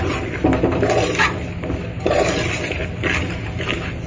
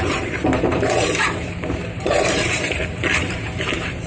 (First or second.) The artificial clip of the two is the second